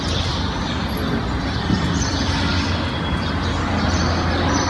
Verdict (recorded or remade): recorded